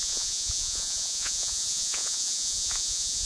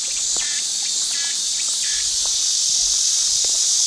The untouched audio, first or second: second